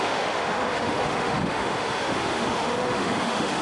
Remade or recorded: remade